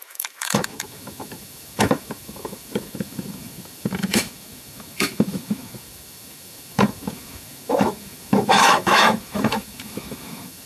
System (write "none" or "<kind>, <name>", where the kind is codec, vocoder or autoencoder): autoencoder, DAC-VAE